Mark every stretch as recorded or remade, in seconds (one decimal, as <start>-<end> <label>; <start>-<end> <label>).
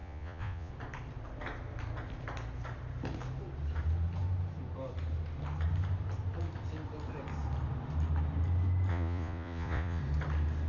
0.0-0.7 remade; 0.7-8.9 recorded; 8.9-10.0 remade; 10.0-10.7 recorded